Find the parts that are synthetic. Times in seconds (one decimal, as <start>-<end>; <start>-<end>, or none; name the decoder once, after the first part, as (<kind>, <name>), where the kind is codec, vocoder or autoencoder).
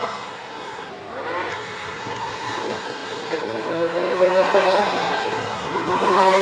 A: 0.0-0.9 (codec, SNAC); 1.5-6.4